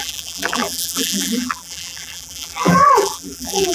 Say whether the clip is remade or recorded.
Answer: remade